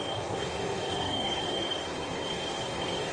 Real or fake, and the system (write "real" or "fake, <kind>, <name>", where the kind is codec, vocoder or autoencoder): fake, codec, SNAC